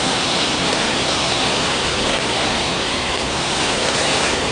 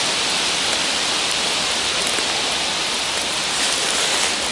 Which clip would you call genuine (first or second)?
second